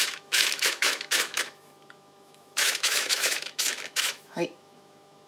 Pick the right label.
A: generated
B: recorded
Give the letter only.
A